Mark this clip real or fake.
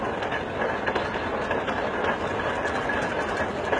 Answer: real